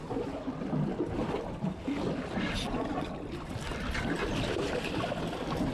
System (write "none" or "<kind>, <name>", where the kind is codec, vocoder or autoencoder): none